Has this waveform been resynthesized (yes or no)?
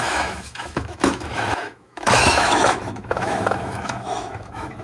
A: yes